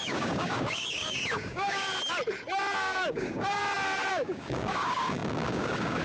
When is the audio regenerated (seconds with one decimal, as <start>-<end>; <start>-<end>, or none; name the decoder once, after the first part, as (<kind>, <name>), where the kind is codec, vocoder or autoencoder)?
0.0-1.9 (codec, DAC); 2.8-3.6; 4.1-6.0